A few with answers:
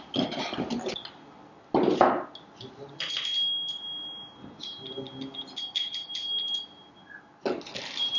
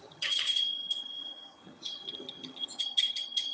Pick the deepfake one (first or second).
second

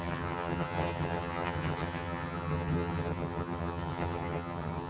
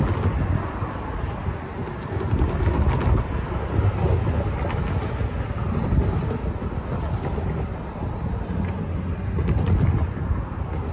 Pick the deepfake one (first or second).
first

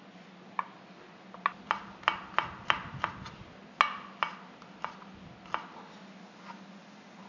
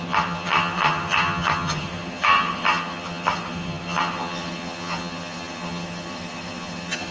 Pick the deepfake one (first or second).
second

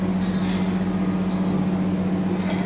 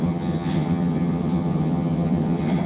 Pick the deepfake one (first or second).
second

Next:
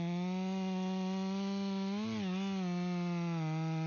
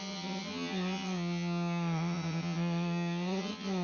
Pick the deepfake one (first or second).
second